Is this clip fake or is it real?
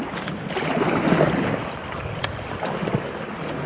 real